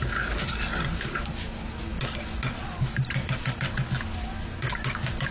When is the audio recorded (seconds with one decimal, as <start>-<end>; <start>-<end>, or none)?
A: 0.0-5.3

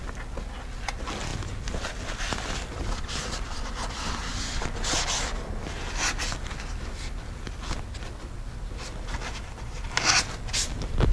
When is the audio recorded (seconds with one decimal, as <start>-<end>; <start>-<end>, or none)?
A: 0.0-11.1

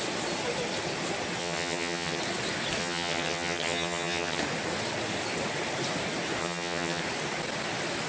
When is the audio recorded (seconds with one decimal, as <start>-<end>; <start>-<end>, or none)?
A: 0.0-1.4; 2.2-2.8; 4.4-6.4; 7.0-8.1

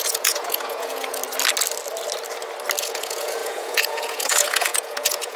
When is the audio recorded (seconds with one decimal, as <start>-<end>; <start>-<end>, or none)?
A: 1.2-2.8

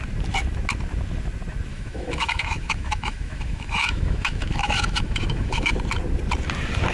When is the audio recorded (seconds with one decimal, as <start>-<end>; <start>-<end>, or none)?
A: 0.0-1.7; 5.7-6.9

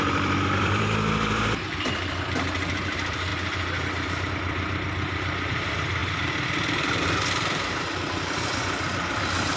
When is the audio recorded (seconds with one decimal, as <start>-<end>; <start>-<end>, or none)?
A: 3.3-4.3

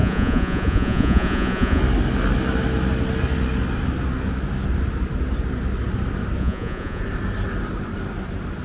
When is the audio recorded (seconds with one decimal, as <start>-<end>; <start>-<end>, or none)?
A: 1.8-6.4; 7.0-8.6